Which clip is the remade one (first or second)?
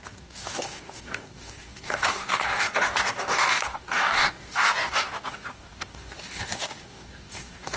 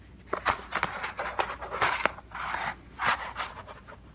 first